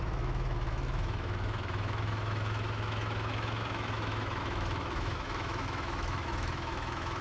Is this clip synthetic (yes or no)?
yes